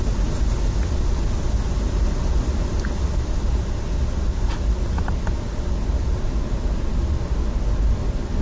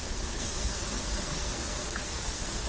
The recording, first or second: first